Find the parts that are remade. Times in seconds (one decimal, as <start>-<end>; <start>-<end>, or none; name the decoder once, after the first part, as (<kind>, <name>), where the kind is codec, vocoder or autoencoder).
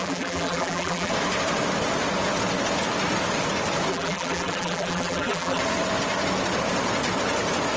0.0-1.1 (vocoder, BigVGAN v2); 3.9-5.6